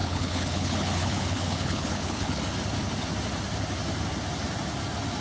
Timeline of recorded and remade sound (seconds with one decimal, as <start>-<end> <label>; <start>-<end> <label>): 0.0-2.4 remade; 2.4-5.2 recorded